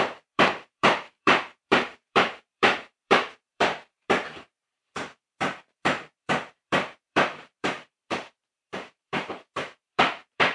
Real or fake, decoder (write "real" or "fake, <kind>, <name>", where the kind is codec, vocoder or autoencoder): fake, vocoder, BigVGAN v2